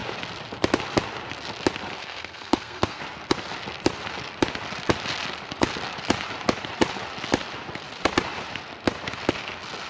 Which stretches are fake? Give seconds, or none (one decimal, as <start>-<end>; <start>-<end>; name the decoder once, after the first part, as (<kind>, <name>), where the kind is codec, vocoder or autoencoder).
2.0-3.0 (codec, SNAC)